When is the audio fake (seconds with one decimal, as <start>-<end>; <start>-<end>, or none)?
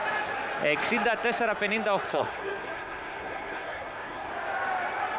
2.1-4.3